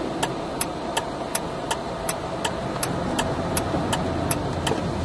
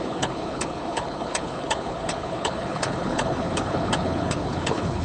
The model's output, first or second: second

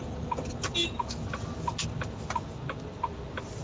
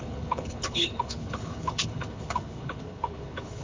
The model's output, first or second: second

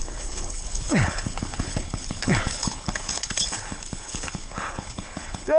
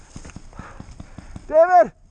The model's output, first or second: first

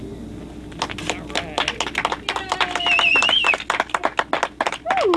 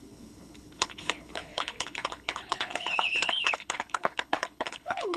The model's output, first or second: second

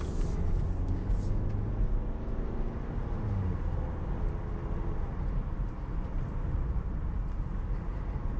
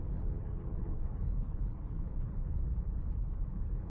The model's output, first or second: second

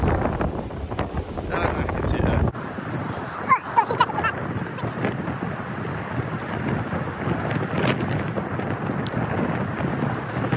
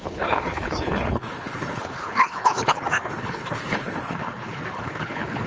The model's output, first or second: second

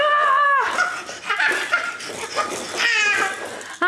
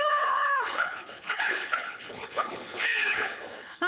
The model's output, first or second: second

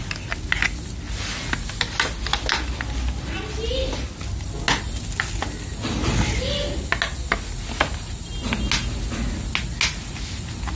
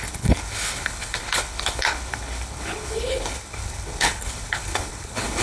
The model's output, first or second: second